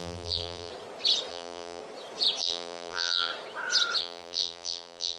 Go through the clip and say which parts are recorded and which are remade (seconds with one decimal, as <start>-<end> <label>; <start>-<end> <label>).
0.0-0.7 remade; 0.7-1.3 recorded; 1.3-1.8 remade; 1.8-2.4 recorded; 2.4-3.3 remade; 3.3-4.0 recorded; 4.0-5.2 remade